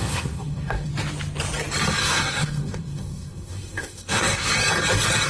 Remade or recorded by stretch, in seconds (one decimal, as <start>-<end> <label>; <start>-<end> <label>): 0.0-0.9 remade; 0.9-2.0 recorded; 2.0-4.5 remade; 4.5-5.3 recorded